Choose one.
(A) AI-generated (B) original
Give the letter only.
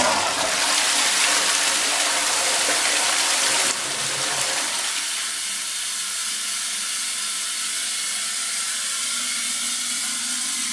B